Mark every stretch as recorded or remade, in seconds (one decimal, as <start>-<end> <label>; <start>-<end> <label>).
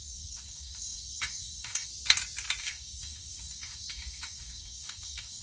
0.0-1.9 remade; 1.9-2.6 recorded; 2.6-5.4 remade